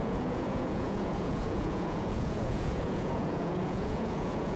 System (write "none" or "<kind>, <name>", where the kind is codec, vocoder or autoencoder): vocoder, Vocos